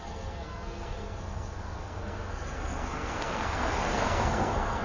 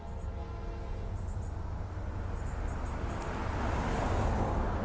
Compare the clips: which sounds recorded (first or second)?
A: second